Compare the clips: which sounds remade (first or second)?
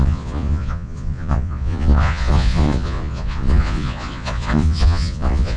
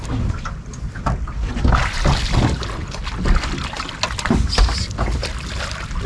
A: first